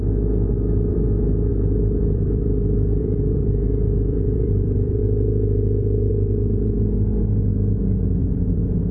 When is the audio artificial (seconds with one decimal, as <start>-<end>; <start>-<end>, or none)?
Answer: 0.0-6.1; 8.2-8.9